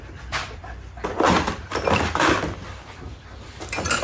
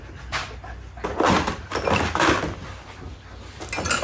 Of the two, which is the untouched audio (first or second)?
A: second